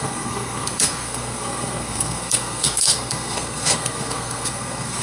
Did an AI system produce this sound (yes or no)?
yes